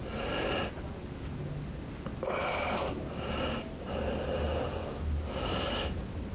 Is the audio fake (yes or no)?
no